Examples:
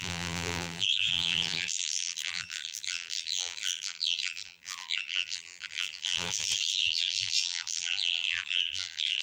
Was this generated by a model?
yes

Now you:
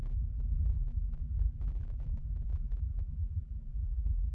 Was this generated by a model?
yes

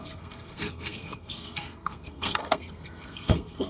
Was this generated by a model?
yes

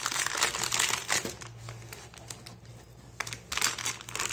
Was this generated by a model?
no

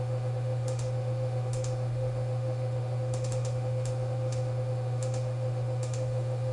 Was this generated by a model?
yes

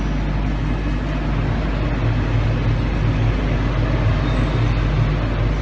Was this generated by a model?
no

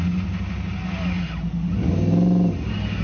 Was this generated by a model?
no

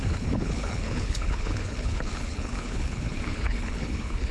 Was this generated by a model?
yes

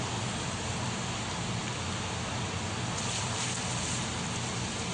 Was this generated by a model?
no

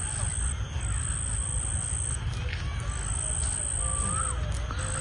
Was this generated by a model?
no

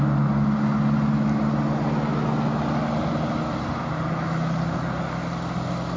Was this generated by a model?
no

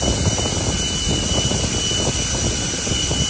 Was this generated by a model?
no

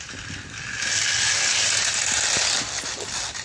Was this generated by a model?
no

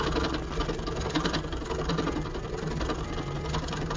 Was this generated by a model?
no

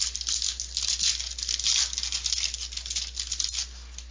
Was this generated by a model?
no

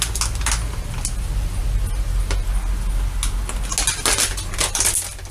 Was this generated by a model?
no